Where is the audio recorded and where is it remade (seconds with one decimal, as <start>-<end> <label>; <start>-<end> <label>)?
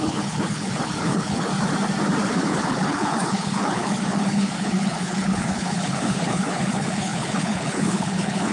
0.0-1.5 remade; 1.5-2.3 recorded; 2.3-8.5 remade